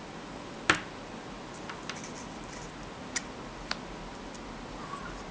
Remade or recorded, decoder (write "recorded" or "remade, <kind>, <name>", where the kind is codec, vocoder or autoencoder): recorded